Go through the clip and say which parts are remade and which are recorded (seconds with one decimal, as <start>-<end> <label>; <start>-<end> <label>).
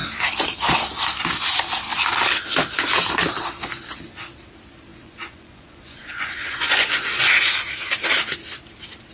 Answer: 0.0-4.9 recorded; 4.9-7.3 remade; 7.3-9.1 recorded